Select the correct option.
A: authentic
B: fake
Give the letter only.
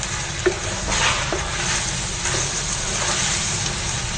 A